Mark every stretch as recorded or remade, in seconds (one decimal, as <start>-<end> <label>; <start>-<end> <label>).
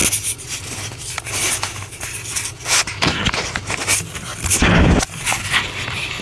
0.0-6.2 recorded